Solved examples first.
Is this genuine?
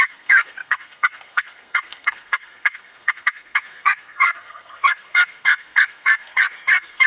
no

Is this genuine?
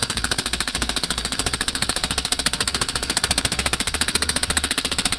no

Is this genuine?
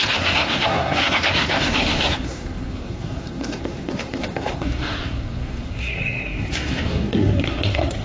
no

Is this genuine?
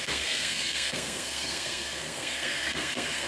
no